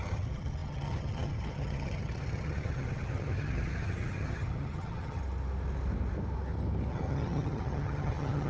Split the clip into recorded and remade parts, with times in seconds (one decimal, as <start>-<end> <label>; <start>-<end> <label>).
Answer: 0.0-5.2 remade; 5.2-6.9 recorded; 6.9-8.5 remade